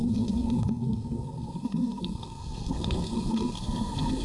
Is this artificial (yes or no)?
yes